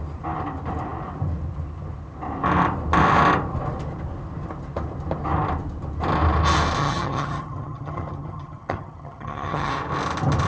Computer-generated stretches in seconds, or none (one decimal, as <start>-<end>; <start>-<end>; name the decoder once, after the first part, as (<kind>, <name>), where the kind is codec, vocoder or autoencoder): 6.8-9.7 (vocoder, HiFi-GAN)